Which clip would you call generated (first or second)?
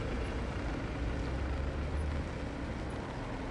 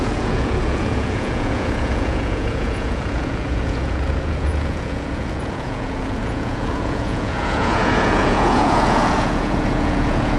second